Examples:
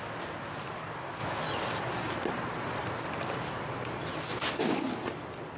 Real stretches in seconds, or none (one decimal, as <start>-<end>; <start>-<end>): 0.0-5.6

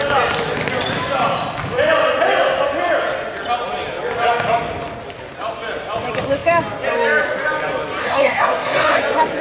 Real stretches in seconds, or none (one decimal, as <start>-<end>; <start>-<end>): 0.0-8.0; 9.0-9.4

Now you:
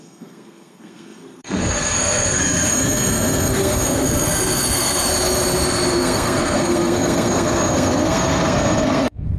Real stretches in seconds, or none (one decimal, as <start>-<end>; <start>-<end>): 5.1-5.9

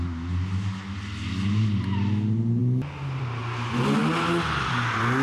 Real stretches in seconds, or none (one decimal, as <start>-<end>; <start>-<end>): 0.0-5.2